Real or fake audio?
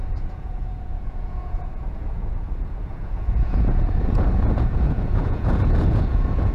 fake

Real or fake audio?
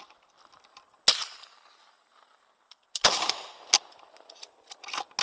real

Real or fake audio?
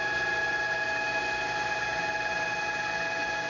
real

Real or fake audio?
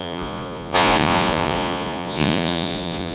fake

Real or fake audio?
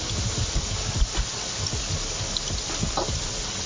real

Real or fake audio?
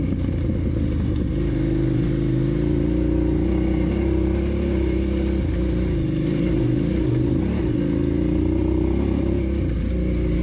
real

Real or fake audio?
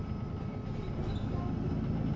real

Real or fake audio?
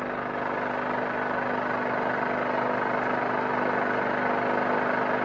real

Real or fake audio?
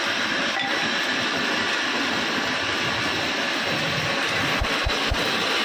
fake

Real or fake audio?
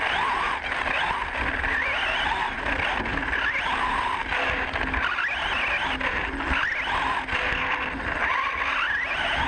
real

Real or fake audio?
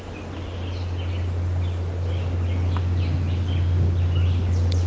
real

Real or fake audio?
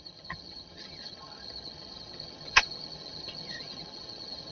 fake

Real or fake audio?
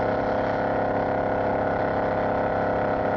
real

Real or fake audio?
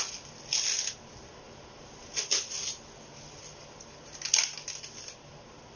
real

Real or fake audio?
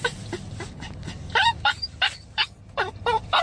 real